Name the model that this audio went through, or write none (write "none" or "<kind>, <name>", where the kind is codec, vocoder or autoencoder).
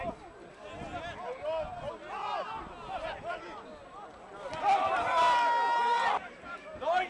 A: none